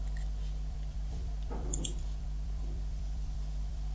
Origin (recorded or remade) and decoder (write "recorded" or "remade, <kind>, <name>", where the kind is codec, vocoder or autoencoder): remade, vocoder, BigVGAN v2